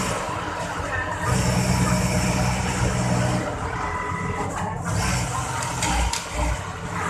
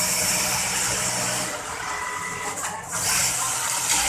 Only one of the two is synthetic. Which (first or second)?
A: second